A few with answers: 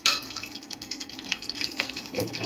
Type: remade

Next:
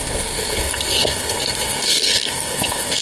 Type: remade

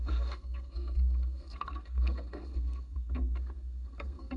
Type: remade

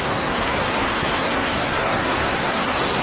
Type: remade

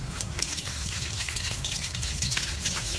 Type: remade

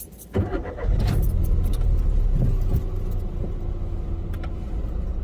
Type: recorded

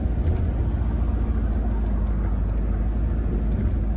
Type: recorded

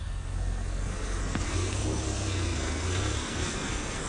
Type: remade